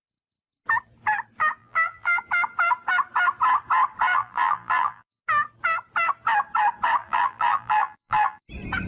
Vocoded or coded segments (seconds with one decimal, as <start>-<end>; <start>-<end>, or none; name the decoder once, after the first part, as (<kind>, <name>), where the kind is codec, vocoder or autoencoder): 1.6-2.2 (vocoder, BigVGAN v2); 4.1-5.2; 7.0-8.4